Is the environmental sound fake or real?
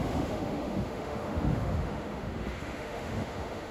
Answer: fake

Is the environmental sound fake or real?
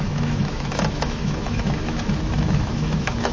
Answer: fake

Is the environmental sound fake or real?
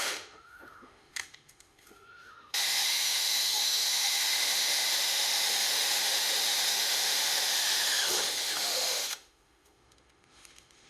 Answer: fake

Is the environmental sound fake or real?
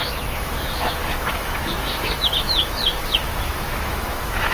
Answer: fake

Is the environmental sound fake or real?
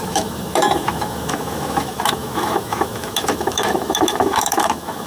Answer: fake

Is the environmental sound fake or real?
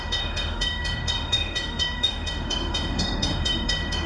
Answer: fake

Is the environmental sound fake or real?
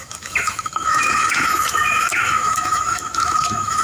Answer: fake